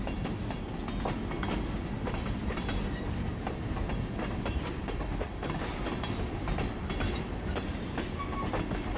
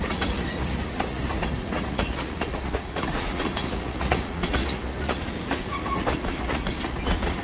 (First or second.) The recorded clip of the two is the first